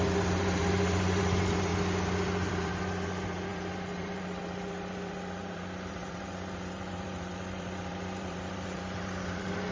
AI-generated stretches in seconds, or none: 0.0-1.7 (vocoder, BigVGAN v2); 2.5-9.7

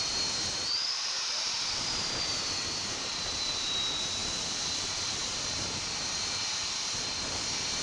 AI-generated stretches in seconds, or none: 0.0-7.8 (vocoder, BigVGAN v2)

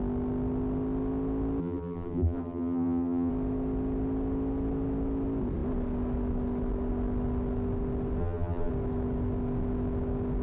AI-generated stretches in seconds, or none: 1.6-3.3 (vocoder, BigVGAN v2); 8.2-8.7

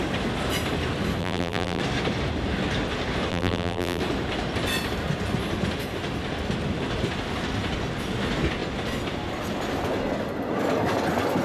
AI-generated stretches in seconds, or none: 1.2-1.8 (vocoder, BigVGAN v2); 3.3-4.0